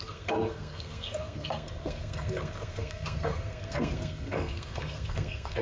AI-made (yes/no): yes